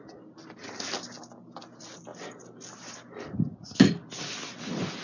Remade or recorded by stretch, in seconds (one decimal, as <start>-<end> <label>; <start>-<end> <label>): 0.0-5.0 recorded